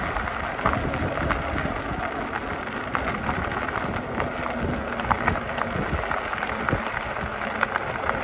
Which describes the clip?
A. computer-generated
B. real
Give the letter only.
B